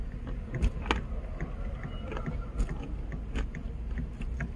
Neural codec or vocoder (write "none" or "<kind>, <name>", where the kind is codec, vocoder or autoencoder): none